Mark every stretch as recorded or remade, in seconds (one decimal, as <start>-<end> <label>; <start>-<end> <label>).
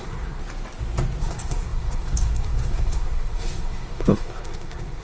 0.0-0.4 remade; 0.4-1.2 recorded; 1.2-5.0 remade